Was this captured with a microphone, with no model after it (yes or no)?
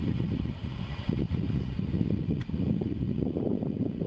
no